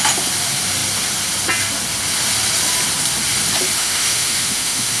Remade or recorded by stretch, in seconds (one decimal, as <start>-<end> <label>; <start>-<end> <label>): 0.0-3.8 recorded; 3.8-5.0 remade